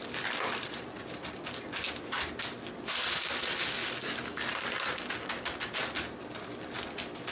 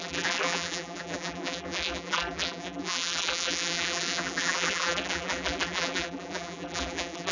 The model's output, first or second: second